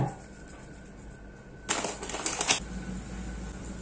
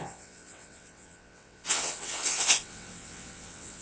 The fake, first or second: second